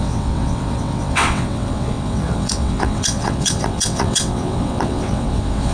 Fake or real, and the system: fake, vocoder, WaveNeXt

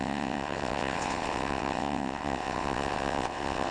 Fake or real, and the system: fake, vocoder, WaveNeXt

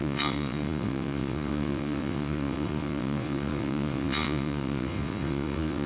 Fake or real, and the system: fake, vocoder, WaveNeXt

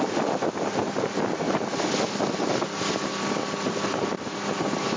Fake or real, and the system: real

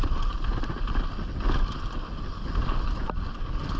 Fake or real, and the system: real